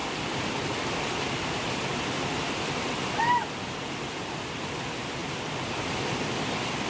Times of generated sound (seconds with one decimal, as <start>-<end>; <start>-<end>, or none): none